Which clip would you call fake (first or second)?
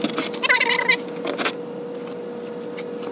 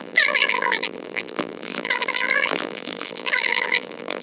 second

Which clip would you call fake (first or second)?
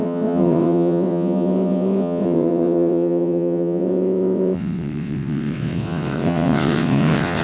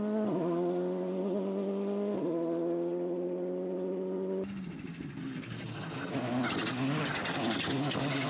first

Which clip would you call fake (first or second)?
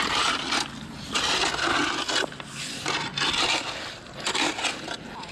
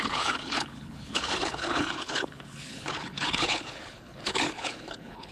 second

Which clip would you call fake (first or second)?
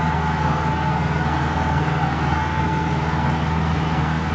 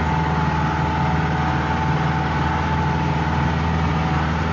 first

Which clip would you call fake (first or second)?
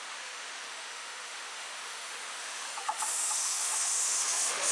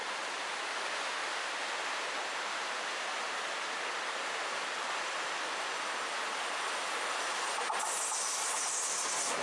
first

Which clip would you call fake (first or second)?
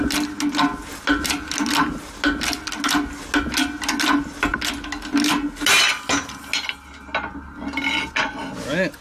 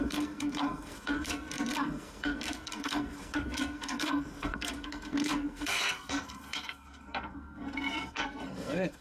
second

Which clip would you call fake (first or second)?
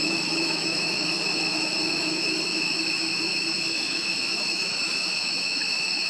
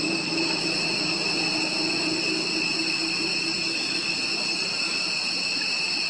first